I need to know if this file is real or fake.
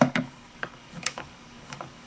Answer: fake